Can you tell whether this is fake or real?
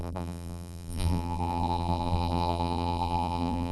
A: fake